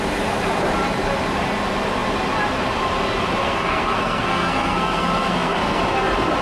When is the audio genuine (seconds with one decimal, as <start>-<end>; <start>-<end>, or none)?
0.0-3.4; 5.8-6.4